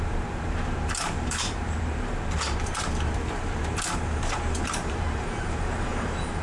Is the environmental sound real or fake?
fake